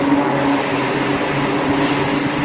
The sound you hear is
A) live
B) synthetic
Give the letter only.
A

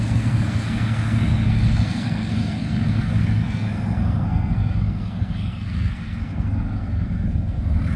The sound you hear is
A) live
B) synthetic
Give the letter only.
B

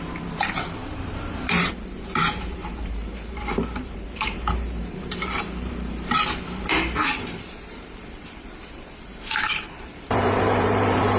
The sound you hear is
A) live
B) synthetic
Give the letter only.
B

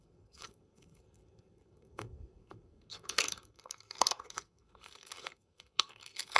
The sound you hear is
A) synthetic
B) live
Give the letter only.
A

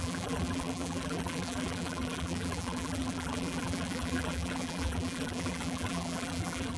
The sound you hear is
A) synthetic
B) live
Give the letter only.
A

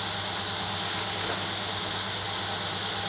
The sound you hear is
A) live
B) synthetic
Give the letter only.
A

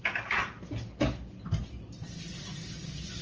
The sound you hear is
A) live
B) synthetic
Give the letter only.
A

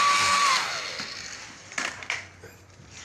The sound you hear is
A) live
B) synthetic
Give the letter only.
A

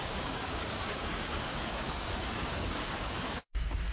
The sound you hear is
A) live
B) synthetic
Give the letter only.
B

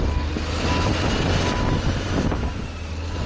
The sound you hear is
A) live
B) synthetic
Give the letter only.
A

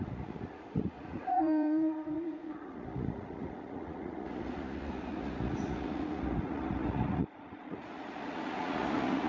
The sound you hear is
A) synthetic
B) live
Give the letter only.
A